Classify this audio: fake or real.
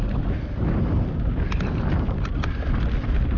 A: real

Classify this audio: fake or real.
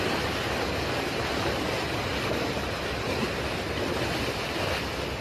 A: real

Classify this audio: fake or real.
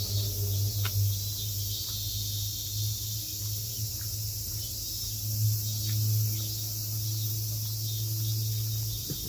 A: real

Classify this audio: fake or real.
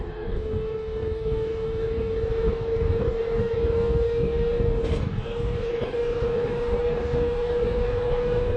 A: fake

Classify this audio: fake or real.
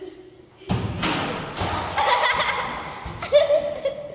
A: real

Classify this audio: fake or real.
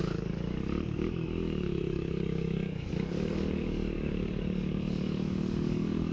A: fake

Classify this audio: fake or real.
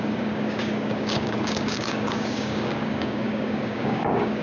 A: fake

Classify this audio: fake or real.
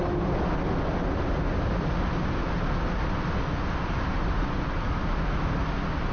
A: real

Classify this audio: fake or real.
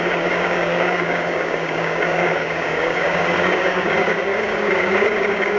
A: fake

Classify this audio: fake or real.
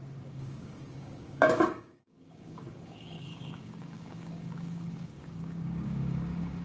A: fake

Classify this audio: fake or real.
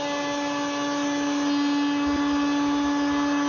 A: real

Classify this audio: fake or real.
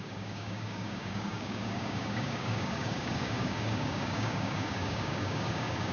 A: fake